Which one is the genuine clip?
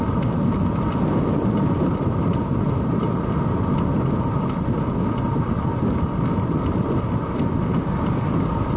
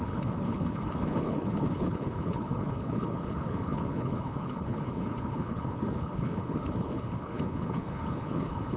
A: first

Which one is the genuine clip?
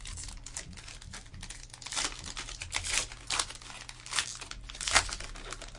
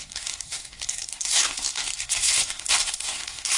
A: first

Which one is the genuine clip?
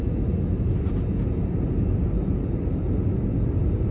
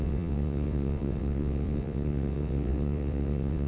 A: first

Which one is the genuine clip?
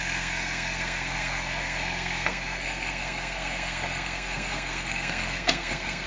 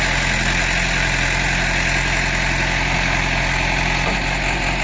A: second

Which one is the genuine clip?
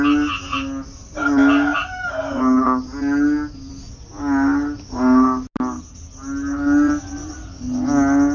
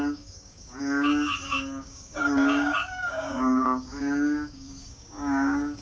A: first